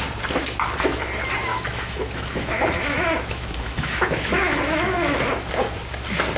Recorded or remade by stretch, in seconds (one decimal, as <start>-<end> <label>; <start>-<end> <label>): 0.0-1.5 recorded; 1.5-5.3 remade; 5.3-6.4 recorded